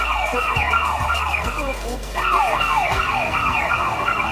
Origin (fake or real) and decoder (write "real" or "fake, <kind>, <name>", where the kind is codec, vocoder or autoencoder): fake, codec, SNAC